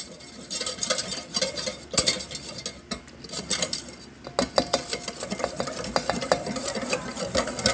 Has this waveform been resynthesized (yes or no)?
no